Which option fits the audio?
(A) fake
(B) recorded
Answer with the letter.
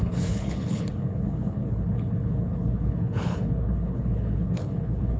A